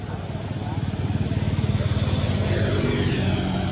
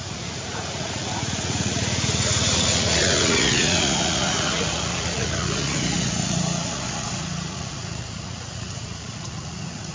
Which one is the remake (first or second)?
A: second